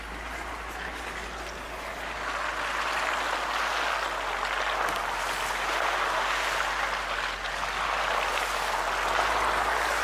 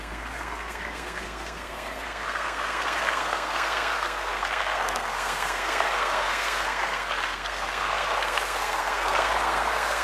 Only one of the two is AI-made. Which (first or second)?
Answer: second